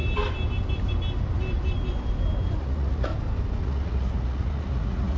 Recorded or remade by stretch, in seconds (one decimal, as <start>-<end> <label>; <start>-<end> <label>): 0.0-2.6 recorded; 2.6-3.1 remade; 3.1-3.6 recorded; 3.6-5.2 remade